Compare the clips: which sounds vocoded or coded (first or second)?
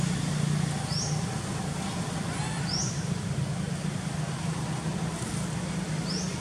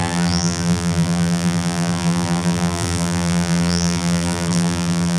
second